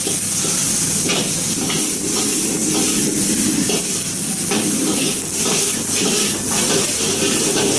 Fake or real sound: real